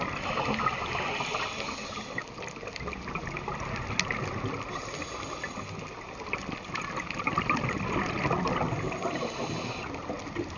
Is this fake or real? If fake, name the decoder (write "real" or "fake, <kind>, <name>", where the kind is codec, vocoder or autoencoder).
real